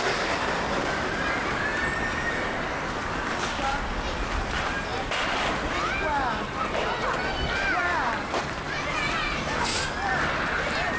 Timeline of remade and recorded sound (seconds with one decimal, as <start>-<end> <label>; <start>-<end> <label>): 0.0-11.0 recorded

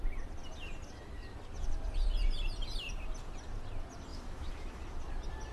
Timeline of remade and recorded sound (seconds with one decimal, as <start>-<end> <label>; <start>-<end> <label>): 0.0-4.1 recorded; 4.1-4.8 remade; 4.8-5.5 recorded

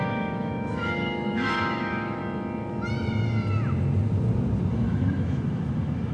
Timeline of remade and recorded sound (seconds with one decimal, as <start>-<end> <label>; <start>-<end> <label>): 0.0-2.2 remade; 2.2-4.7 recorded; 4.7-6.1 remade

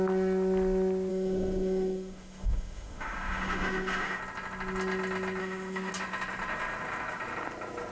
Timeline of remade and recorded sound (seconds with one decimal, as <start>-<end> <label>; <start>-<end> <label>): 0.0-1.1 recorded; 1.1-4.2 remade; 4.2-5.4 recorded; 5.4-5.9 remade; 5.9-7.9 recorded

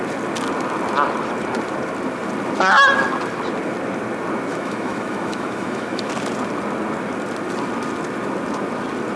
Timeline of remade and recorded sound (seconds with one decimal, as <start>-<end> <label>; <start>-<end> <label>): 0.0-4.5 recorded; 4.5-6.1 remade; 6.1-9.2 recorded